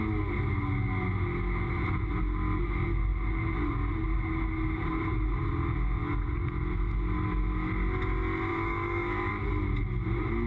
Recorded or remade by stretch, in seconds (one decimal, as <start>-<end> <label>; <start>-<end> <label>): 0.0-8.5 recorded; 8.5-9.3 remade; 9.3-10.5 recorded